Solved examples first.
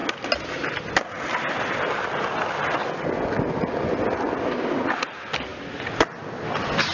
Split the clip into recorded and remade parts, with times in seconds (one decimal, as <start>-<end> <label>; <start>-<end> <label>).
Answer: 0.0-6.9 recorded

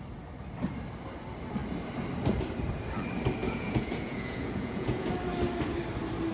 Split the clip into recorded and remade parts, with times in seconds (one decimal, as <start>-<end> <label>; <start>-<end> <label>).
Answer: 0.0-3.4 recorded; 3.4-5.1 remade; 5.1-6.3 recorded

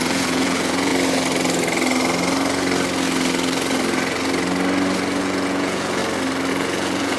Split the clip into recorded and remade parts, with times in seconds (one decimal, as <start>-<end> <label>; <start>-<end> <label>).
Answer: 0.0-0.9 remade; 0.9-5.2 recorded; 5.2-6.0 remade; 6.0-6.5 recorded; 6.5-7.2 remade

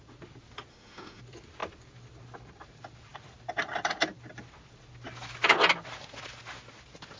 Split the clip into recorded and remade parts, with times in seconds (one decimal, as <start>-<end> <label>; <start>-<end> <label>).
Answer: 0.0-0.7 recorded; 0.7-1.2 remade; 1.2-7.2 recorded

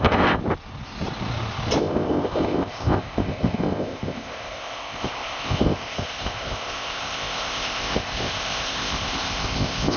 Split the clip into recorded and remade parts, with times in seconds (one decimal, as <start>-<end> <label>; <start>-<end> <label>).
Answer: 0.0-0.4 remade; 0.4-1.8 recorded; 1.8-10.0 remade

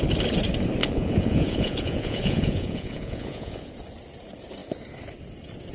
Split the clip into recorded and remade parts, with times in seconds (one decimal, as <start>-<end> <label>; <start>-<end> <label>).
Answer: 0.0-0.8 recorded; 0.8-3.7 remade; 3.7-5.7 recorded